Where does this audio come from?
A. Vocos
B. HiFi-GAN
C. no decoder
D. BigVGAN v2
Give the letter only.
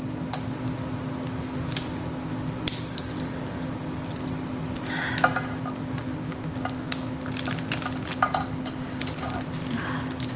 C